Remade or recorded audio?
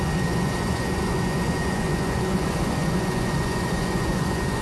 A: remade